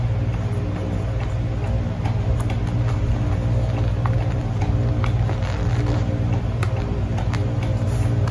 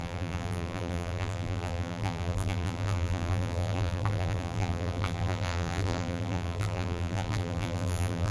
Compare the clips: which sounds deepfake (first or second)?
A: second